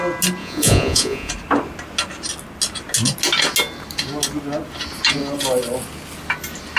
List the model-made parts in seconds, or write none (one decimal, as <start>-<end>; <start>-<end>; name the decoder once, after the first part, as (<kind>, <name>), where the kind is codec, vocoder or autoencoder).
0.4-1.3 (vocoder, Vocos)